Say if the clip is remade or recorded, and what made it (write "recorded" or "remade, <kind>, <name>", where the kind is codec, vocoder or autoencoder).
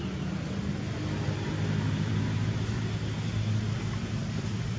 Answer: remade, vocoder, BigVGAN v2